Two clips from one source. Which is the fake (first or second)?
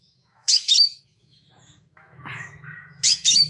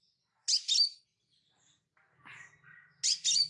first